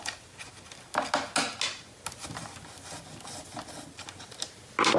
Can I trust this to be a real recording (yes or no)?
yes